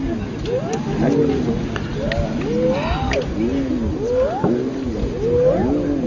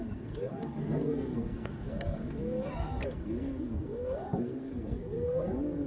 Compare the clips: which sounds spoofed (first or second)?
second